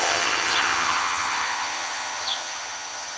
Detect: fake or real fake